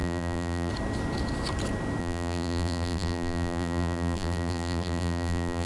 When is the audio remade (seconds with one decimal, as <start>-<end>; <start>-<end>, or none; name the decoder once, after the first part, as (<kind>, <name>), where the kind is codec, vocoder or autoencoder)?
0.0-0.7 (vocoder, BigVGAN v2); 2.0-5.7